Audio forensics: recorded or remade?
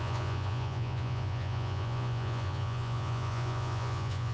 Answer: remade